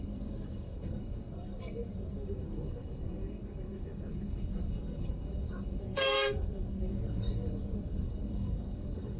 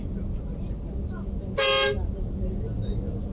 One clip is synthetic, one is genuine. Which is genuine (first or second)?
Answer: second